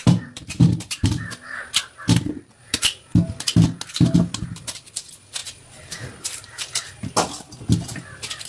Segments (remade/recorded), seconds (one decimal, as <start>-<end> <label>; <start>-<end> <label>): 0.0-2.8 remade; 2.8-5.4 recorded; 5.4-6.6 remade; 6.6-8.5 recorded

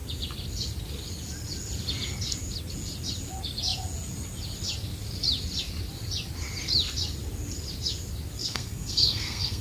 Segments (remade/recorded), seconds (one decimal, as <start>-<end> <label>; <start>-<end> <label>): 0.0-8.4 recorded; 8.4-9.6 remade

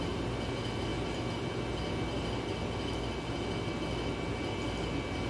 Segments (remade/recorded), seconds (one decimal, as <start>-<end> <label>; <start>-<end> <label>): 0.0-5.3 recorded